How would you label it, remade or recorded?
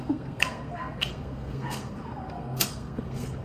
remade